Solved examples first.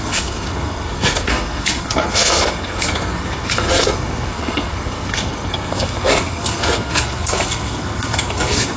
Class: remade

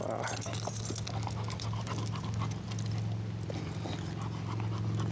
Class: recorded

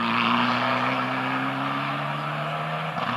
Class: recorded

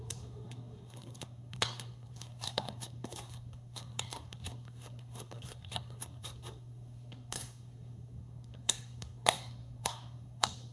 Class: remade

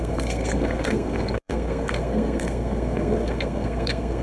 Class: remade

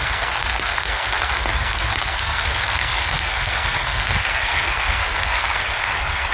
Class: remade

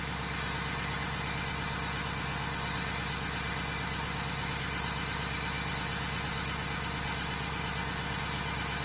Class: recorded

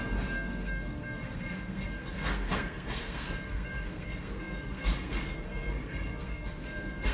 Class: remade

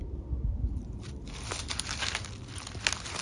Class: recorded